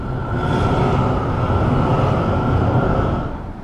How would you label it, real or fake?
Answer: real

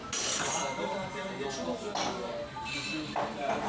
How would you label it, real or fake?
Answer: real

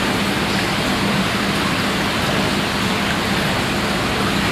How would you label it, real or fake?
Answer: real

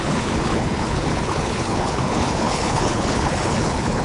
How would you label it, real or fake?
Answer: fake